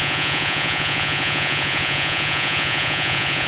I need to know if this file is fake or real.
fake